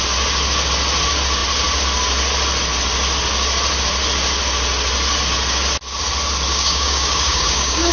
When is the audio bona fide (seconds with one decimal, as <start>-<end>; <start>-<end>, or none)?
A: 0.0-6.5